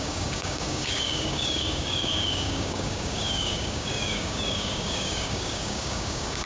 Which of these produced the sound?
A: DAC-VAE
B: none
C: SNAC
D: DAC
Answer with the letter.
D